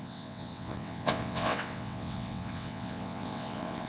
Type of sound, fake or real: fake